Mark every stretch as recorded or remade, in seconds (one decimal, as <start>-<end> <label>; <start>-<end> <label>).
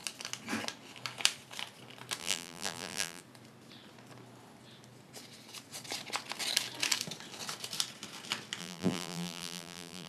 0.0-2.2 recorded; 2.2-3.2 remade; 3.2-8.6 recorded; 8.6-10.1 remade